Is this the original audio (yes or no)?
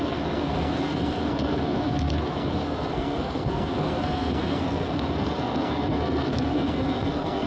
no